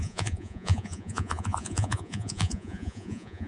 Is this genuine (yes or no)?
no